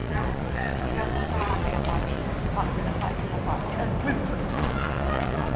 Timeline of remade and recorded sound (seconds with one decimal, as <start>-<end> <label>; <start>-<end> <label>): 0.0-2.2 remade; 2.2-4.5 recorded; 4.5-5.6 remade